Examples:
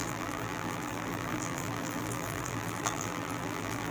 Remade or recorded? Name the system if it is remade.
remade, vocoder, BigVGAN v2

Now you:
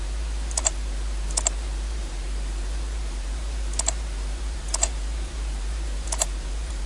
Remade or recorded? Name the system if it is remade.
remade, vocoder, BigVGAN v2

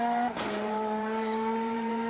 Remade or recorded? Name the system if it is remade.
remade, vocoder, BigVGAN v2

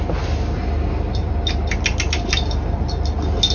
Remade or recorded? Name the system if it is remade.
recorded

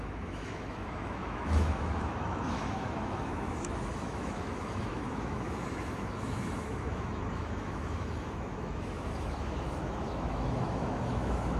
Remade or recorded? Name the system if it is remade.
remade, autoencoder, DAC-VAE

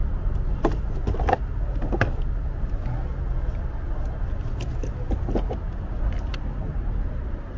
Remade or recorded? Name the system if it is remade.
recorded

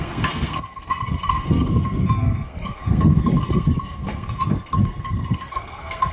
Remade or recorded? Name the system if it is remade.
remade, codec, SNAC